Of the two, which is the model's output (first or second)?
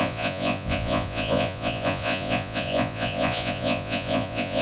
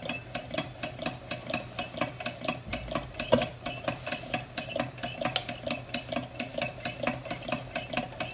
first